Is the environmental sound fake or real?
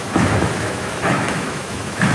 fake